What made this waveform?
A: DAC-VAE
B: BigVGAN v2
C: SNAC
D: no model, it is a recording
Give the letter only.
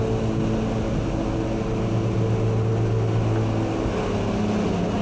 D